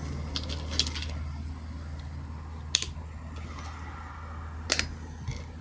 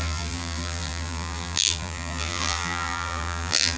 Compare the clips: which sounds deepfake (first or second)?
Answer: second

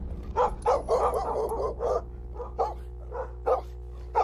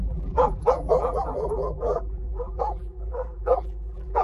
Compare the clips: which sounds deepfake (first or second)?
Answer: second